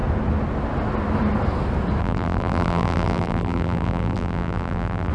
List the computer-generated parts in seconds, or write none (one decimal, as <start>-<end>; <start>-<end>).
2.0-5.1